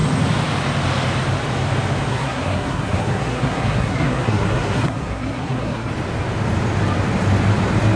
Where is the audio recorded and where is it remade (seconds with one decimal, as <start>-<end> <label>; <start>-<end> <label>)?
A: 0.0-2.1 recorded; 2.1-5.9 remade; 5.9-8.0 recorded